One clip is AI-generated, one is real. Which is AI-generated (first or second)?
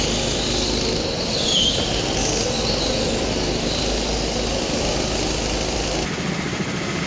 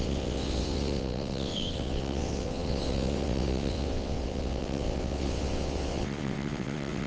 second